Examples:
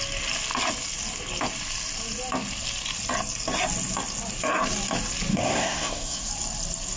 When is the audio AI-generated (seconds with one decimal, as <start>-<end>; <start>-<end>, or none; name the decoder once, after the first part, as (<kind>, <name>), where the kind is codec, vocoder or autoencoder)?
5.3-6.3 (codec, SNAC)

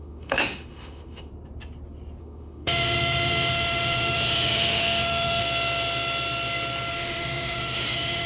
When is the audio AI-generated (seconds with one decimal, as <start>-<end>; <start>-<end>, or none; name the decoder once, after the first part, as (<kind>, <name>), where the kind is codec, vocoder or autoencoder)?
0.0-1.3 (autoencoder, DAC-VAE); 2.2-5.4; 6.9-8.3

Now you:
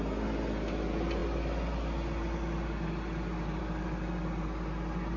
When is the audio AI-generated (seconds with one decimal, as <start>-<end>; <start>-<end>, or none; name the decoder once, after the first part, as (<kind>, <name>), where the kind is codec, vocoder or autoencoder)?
none

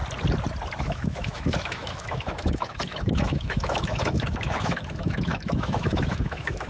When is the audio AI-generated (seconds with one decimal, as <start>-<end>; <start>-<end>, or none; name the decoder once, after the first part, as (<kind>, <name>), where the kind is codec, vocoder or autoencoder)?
0.8-6.7 (autoencoder, DAC-VAE)